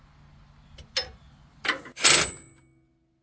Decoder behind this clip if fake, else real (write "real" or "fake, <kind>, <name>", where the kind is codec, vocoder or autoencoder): real